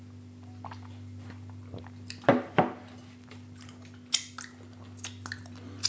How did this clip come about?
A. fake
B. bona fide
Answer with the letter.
B